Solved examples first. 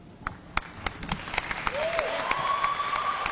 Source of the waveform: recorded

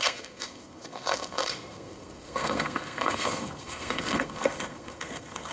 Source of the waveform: remade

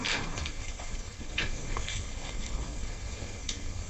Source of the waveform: remade